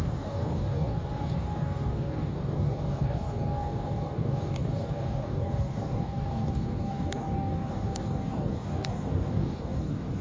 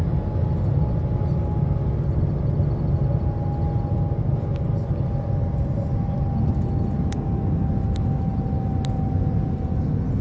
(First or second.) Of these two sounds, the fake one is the first